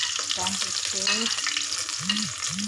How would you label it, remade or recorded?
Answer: recorded